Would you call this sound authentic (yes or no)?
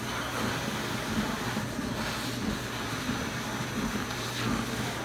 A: yes